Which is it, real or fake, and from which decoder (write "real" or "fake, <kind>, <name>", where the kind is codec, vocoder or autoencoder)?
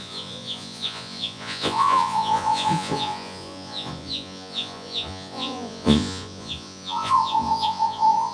fake, vocoder, Vocos